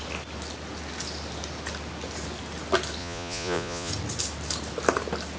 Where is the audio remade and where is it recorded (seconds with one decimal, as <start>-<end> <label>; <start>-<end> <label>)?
0.0-3.0 recorded; 3.0-3.9 remade; 3.9-5.4 recorded